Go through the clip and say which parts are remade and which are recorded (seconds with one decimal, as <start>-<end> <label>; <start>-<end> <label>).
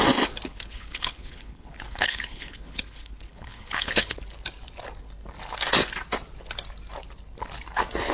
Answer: 0.0-0.5 recorded; 0.5-4.2 remade; 4.2-8.1 recorded